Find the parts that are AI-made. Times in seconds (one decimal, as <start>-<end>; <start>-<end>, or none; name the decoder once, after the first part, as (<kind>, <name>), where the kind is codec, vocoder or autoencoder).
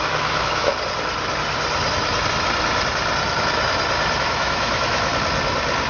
0.0-0.7 (autoencoder, DAC-VAE); 4.2-5.1